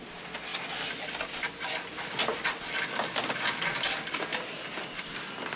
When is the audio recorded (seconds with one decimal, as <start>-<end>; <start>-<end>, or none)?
0.0-5.6